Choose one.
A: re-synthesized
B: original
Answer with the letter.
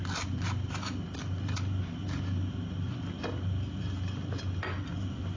B